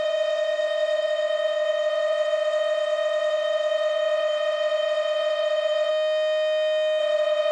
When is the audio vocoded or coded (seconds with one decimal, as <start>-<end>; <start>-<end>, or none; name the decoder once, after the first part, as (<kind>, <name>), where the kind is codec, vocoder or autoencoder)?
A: 0.0-5.9 (vocoder, WaveNeXt); 7.0-7.5